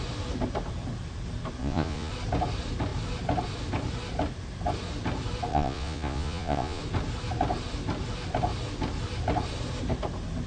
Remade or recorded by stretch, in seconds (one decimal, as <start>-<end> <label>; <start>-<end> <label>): 0.0-1.6 recorded; 1.6-2.1 remade; 2.1-5.5 recorded; 5.5-6.8 remade; 6.8-10.5 recorded

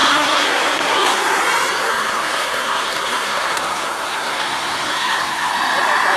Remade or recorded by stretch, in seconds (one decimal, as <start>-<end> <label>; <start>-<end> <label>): 0.0-1.4 remade; 1.4-1.8 recorded; 1.8-5.5 remade; 5.5-6.2 recorded